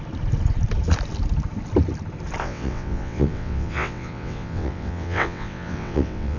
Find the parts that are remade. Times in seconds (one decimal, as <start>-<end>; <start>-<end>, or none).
2.4-6.4